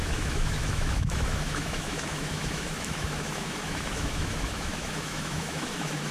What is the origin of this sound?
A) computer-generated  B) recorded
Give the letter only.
A